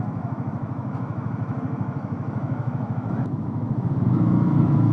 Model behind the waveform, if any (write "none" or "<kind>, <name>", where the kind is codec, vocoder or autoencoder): autoencoder, DAC-VAE